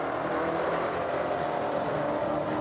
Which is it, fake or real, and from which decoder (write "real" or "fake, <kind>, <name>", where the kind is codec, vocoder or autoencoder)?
real